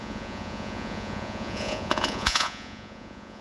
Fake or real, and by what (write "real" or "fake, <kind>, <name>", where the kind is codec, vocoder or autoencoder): fake, vocoder, Vocos